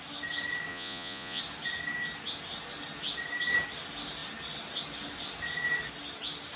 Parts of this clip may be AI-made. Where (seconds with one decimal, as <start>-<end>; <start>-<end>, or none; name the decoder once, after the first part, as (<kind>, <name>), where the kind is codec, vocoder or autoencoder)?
0.7-1.4 (vocoder, Vocos)